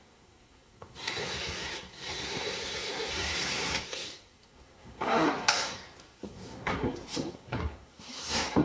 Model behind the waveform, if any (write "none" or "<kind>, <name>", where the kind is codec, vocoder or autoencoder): codec, SNAC